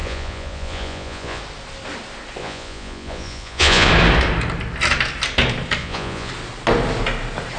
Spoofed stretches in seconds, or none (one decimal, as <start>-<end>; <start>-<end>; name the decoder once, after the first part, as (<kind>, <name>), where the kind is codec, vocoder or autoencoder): 0.0-1.4 (vocoder, Vocos); 2.4-3.9; 5.8-6.3